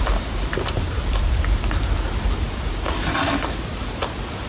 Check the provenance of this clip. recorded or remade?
recorded